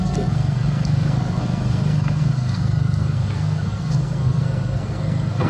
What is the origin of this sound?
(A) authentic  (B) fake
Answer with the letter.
B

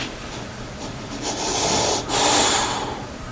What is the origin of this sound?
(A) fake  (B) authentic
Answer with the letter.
A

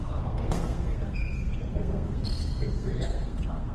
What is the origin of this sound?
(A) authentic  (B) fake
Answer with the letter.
B